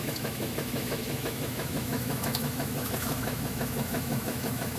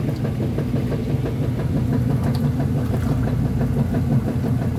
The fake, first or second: first